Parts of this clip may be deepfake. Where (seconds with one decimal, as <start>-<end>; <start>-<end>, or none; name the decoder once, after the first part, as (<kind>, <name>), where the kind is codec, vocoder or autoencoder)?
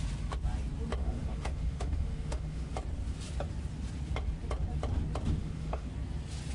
1.0-2.7 (autoencoder, DAC-VAE); 5.4-5.9